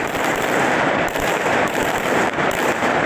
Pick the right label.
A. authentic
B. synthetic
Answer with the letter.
B